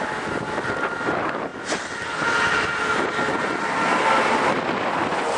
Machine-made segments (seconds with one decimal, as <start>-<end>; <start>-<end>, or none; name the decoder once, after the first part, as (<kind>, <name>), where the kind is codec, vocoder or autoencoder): none